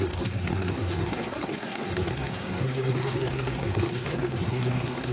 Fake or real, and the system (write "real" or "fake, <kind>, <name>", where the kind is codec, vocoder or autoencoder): fake, codec, SNAC